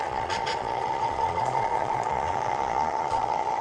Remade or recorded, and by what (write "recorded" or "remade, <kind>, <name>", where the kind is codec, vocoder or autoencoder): remade, vocoder, Vocos